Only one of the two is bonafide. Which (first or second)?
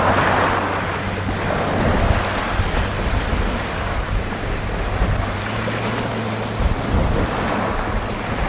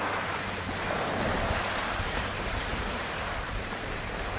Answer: first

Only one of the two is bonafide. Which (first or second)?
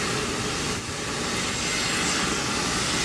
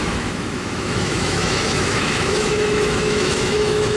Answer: first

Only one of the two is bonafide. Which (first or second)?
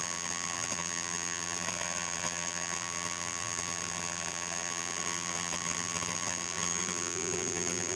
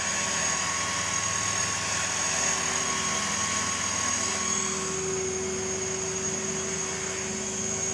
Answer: second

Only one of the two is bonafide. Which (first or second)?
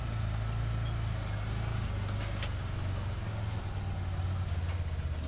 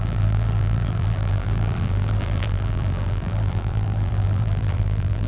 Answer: first